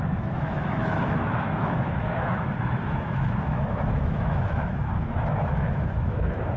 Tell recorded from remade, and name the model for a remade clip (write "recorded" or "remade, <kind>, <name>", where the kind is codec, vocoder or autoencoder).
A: remade, autoencoder, DAC-VAE